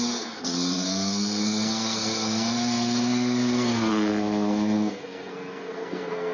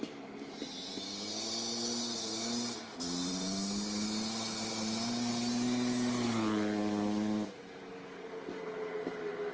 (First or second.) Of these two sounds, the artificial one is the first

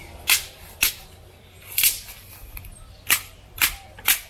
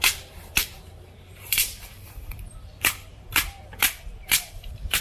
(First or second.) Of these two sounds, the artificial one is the second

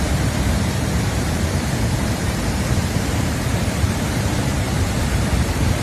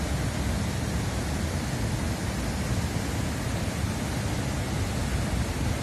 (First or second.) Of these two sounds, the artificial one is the first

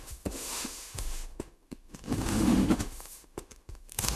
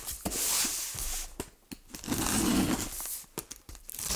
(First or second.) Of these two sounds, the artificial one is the first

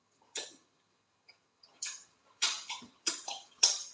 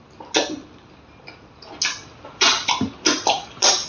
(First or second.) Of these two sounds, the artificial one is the first